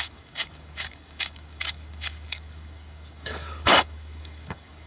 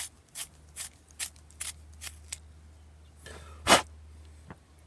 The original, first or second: second